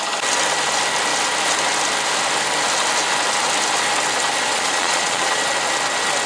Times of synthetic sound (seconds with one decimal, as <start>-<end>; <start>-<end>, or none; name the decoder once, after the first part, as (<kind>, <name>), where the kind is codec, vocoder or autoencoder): 4.5-5.4 (vocoder, Vocos)